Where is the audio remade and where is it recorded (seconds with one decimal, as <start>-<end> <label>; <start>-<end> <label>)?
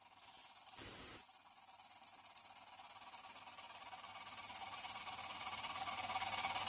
0.0-4.5 recorded; 4.5-5.9 remade; 5.9-6.7 recorded